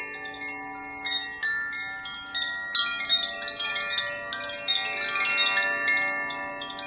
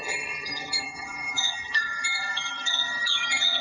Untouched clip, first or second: first